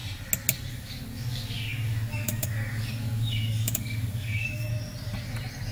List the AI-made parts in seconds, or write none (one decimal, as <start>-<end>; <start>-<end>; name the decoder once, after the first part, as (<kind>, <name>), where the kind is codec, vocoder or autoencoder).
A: 0.7-4.7 (codec, DAC)